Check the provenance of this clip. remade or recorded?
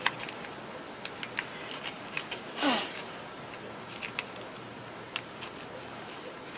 recorded